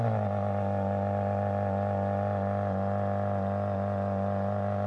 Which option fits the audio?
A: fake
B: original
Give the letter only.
B